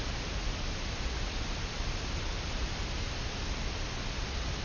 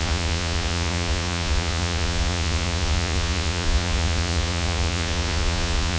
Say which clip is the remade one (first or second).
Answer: second